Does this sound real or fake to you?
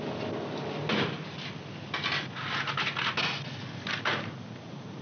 real